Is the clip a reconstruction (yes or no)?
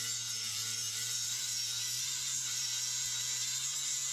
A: yes